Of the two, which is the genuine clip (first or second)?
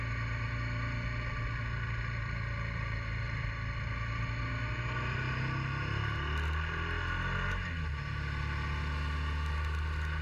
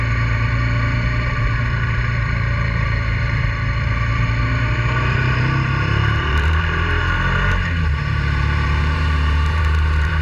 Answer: first